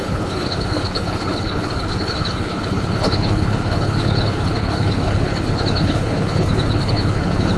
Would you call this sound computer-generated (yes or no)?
yes